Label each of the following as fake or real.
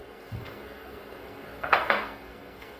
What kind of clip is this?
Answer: fake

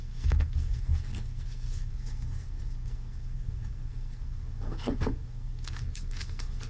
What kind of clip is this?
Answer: fake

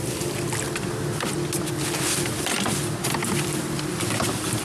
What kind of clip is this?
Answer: real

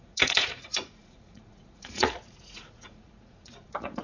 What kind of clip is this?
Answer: fake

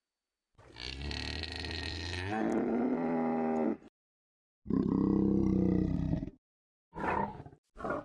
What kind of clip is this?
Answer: real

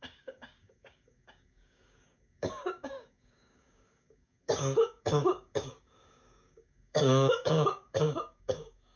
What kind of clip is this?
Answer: fake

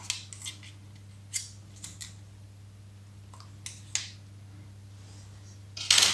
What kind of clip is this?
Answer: real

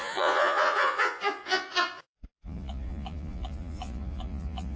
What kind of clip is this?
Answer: fake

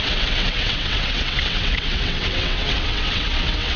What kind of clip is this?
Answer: fake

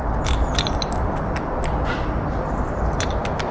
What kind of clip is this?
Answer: real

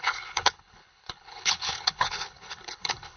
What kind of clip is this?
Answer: fake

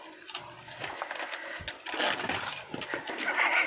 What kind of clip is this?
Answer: real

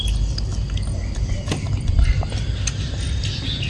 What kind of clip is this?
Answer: real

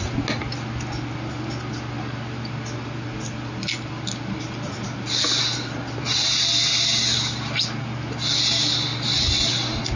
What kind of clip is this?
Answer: real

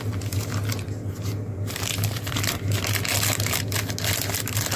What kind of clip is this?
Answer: real